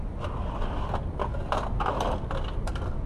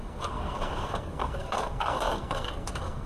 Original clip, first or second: first